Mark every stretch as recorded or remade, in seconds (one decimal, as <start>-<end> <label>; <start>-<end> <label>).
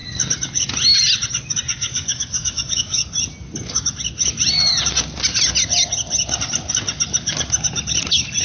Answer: 0.0-1.7 recorded; 1.7-3.0 remade; 3.0-8.4 recorded